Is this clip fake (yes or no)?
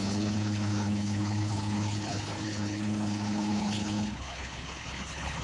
yes